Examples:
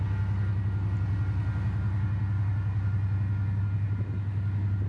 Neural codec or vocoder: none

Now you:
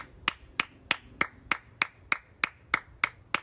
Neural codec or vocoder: none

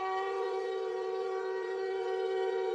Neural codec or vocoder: vocoder, WaveNeXt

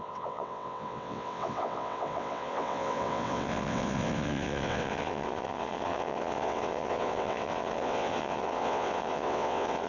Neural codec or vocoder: vocoder, WaveNeXt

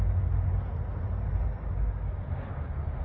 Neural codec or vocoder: none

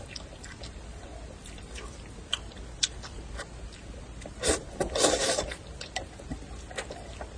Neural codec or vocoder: none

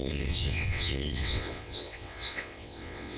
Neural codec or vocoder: vocoder, WaveNeXt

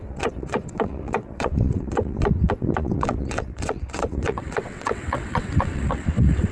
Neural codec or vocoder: vocoder, WaveNeXt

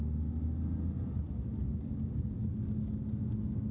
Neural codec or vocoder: none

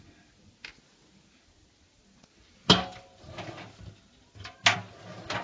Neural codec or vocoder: none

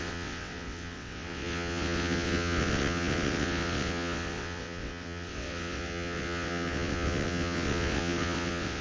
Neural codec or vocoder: vocoder, WaveNeXt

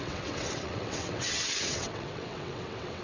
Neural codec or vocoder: vocoder, WaveNeXt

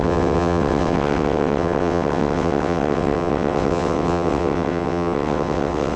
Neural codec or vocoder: vocoder, WaveNeXt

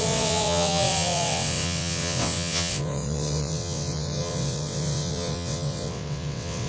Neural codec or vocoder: vocoder, WaveNeXt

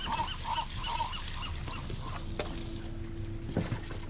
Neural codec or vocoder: none